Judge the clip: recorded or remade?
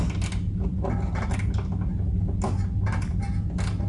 recorded